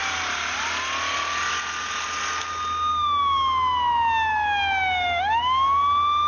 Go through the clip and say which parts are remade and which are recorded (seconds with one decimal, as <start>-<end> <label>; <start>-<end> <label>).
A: 0.0-6.3 recorded